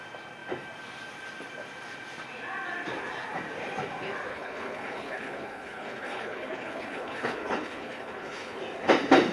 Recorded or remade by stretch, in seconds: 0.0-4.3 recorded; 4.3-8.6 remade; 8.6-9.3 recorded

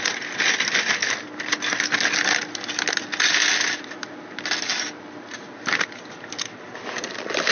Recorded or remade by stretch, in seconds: 0.0-7.5 recorded

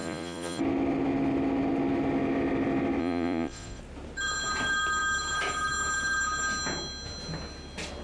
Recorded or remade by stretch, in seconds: 0.0-0.6 remade; 0.6-3.0 recorded; 3.0-3.8 remade; 3.8-8.0 recorded

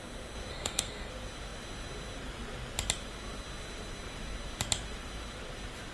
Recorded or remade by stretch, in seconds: 0.0-0.5 recorded; 0.5-1.1 remade; 1.1-5.9 recorded

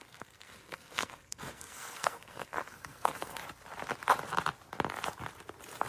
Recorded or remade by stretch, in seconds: 0.0-3.4 remade; 3.4-5.9 recorded

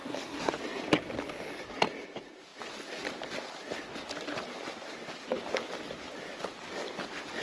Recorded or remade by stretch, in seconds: 0.0-0.5 remade; 0.5-7.4 recorded

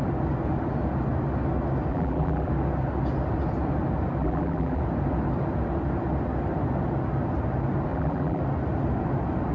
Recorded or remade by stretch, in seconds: 0.0-1.9 recorded; 1.9-2.5 remade; 2.5-4.2 recorded; 4.2-4.8 remade; 4.8-7.9 recorded; 7.9-8.4 remade; 8.4-9.5 recorded